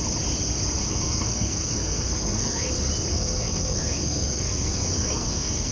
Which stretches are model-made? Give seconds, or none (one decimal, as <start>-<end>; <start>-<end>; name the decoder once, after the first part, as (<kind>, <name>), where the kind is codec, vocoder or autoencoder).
0.8-2.7 (codec, SNAC); 3.1-5.7